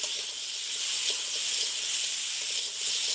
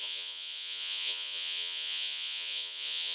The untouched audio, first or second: first